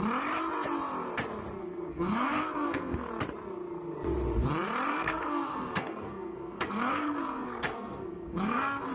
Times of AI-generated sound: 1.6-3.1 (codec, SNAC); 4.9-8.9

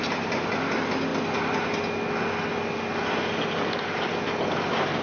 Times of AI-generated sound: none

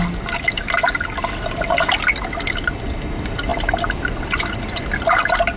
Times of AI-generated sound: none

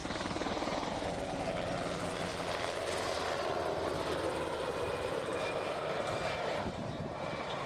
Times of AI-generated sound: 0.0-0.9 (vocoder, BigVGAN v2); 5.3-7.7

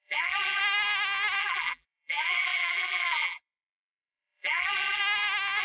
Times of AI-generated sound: 0.0-0.6 (vocoder, BigVGAN v2); 1.4-5.0